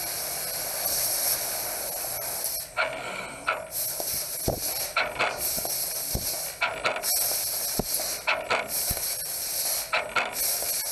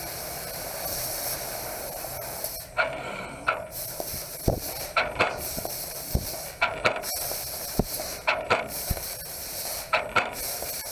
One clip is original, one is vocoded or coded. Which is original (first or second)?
first